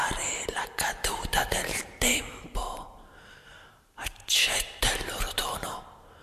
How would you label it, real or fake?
fake